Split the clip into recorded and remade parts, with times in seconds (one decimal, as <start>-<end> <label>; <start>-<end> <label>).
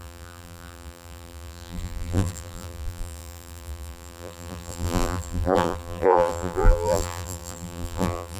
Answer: 0.0-8.4 remade